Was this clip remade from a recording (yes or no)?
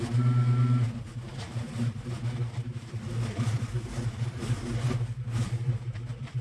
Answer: no